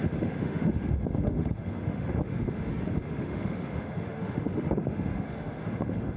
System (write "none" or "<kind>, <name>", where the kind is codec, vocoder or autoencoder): autoencoder, DAC-VAE